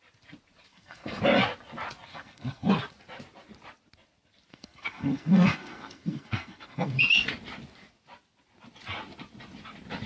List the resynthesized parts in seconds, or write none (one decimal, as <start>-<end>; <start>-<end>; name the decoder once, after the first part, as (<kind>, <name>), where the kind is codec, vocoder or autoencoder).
0.7-1.2 (codec, SNAC); 2.1-2.7; 4.5-7.0